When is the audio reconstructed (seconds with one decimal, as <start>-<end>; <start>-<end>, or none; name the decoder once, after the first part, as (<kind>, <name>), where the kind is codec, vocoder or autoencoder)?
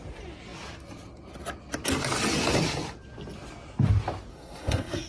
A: 4.3-5.1 (codec, SNAC)